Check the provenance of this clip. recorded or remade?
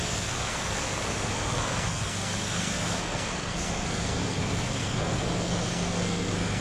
remade